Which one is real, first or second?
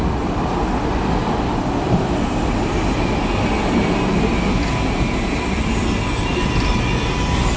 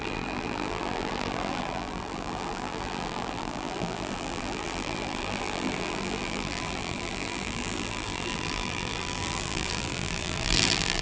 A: first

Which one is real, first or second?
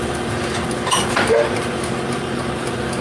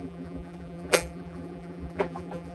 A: first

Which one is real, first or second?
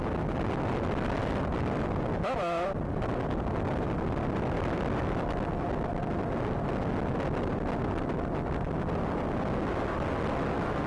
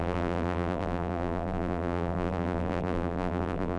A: first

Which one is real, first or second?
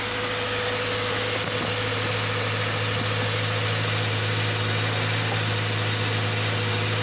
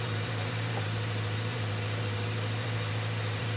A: first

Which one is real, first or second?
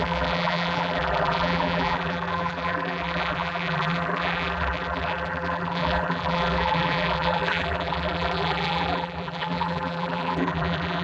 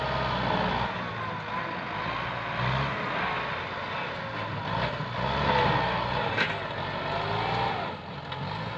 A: second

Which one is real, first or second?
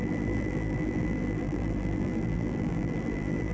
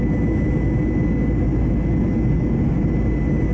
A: second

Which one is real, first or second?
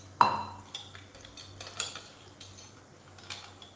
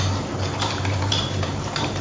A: first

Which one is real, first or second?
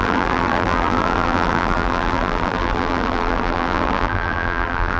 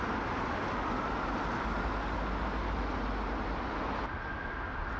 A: second